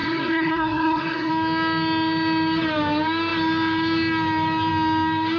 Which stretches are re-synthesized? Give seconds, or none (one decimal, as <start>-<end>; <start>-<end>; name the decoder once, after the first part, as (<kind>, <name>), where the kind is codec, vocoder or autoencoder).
0.0-1.3 (codec, SNAC)